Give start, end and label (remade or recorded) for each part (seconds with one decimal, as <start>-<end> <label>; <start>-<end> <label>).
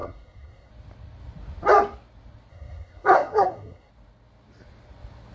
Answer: 0.0-0.7 remade; 0.7-2.5 recorded; 2.5-3.9 remade; 3.9-5.3 recorded